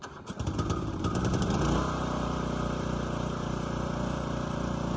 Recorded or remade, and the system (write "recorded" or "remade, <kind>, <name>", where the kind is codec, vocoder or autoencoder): remade, vocoder, BigVGAN v2